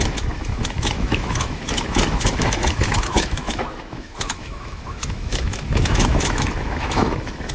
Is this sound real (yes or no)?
no